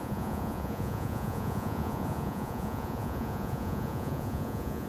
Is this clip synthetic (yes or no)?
yes